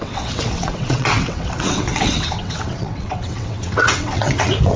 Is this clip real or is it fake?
fake